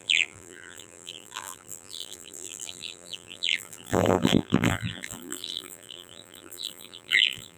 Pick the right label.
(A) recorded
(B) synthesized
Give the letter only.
B